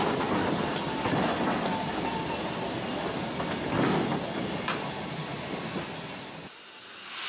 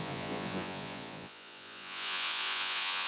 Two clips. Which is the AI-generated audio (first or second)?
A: second